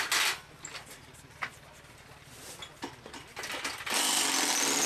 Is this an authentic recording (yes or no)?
yes